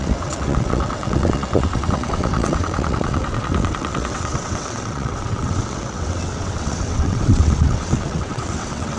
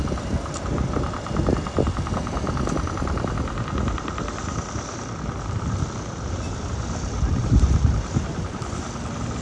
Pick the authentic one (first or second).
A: second